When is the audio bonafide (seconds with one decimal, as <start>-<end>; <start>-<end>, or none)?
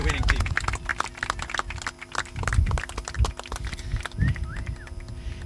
0.5-5.5